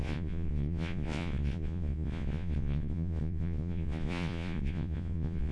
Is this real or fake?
fake